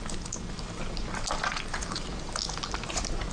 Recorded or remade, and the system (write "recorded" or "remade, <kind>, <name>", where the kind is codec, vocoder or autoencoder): recorded